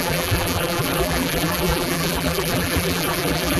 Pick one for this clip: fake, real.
fake